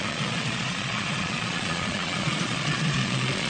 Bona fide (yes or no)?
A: no